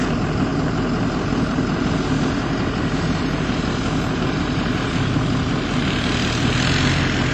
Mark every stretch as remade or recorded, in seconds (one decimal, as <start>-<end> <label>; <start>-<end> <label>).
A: 0.0-7.3 recorded